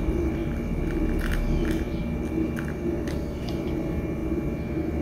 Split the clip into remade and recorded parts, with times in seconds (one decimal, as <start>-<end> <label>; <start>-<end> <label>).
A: 0.0-5.0 recorded